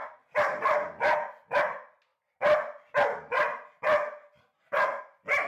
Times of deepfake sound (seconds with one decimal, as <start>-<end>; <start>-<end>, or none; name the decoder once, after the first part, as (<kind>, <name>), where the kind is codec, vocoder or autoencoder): 0.0-1.6 (vocoder, BigVGAN v2)